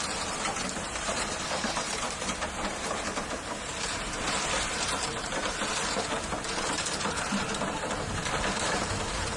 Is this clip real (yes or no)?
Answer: no